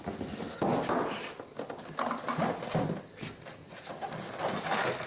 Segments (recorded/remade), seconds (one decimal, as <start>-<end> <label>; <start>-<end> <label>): 0.0-3.6 recorded; 3.6-4.1 remade; 4.1-5.1 recorded